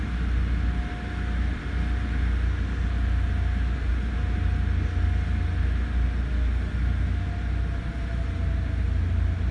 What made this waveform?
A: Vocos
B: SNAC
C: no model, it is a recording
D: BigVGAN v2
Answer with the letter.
C